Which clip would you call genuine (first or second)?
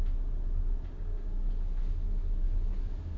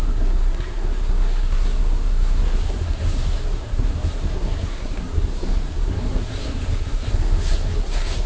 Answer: first